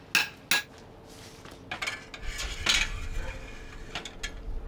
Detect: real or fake real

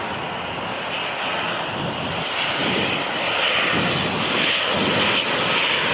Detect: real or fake real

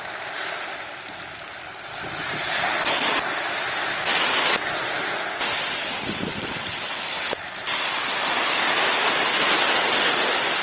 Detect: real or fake real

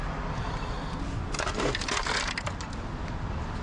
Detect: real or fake real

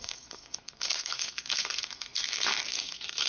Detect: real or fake fake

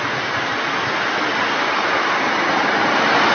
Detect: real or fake real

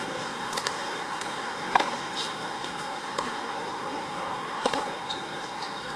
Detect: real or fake fake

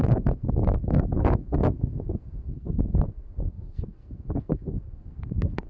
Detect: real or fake fake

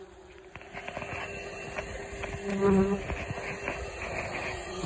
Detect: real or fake real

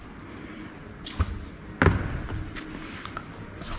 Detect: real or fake real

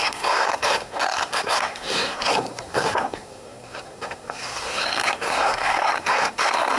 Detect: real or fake fake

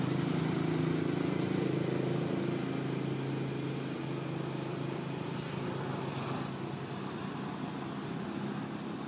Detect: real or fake real